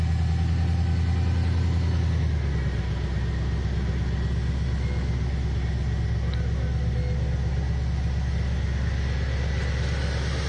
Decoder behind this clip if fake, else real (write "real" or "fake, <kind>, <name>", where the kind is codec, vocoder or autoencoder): real